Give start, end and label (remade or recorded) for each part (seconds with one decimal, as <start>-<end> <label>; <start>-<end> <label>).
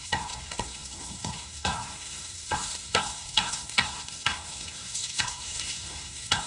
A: 0.0-6.5 remade